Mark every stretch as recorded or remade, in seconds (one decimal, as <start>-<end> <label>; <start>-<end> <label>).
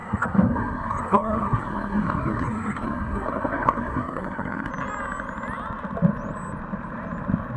0.0-4.7 remade; 4.7-7.6 recorded